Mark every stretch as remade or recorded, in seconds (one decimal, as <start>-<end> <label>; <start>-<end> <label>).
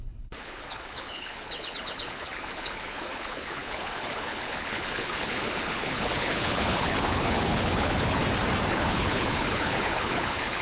0.0-8.2 remade; 8.2-8.7 recorded; 8.7-10.6 remade